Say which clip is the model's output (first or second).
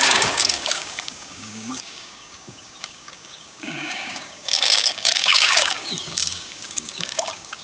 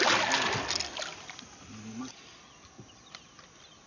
first